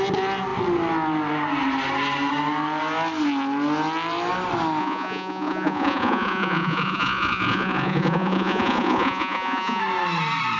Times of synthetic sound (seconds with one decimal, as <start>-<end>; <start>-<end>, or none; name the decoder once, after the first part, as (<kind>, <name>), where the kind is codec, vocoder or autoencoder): 4.8-9.8 (vocoder, Vocos)